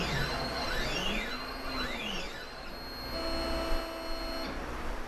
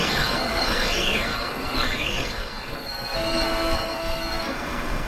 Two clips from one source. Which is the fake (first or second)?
second